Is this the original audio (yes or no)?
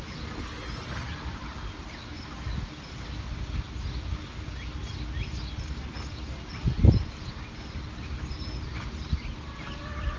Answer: yes